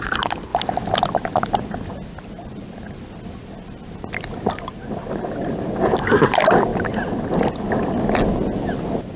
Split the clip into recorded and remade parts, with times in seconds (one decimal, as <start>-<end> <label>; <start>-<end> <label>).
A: 0.0-9.2 recorded